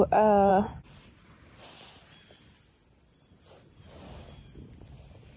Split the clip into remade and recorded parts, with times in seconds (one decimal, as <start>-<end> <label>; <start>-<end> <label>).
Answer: 0.0-5.4 recorded